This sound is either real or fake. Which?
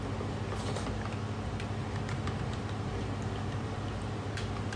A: real